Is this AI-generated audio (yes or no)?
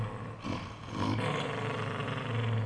no